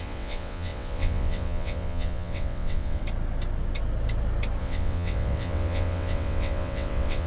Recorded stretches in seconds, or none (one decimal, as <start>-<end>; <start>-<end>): 3.0-4.6